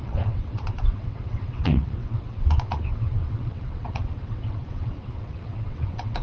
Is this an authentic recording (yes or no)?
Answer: no